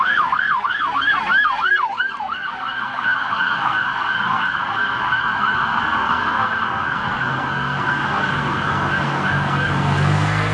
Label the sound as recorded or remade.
remade